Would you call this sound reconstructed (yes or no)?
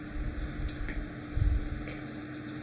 no